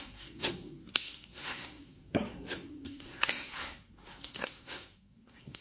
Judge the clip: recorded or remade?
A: remade